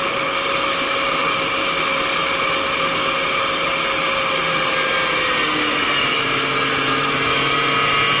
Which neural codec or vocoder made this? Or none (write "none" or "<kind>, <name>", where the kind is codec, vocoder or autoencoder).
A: vocoder, BigVGAN v2